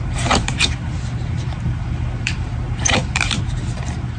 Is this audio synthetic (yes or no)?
yes